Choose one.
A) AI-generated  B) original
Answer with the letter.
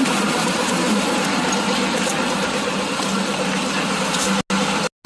B